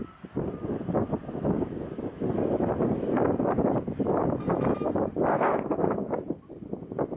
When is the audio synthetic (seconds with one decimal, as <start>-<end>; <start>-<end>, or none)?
5.3-6.1